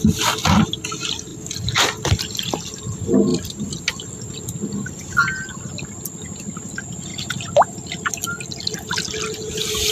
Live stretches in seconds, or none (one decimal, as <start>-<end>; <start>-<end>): 0.0-3.3; 3.8-7.1; 8.1-9.9